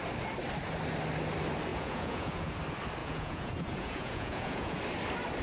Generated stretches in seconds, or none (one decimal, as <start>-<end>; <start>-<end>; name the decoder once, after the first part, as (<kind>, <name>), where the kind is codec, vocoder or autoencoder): 1.7-2.6 (vocoder, Vocos); 3.0-4.8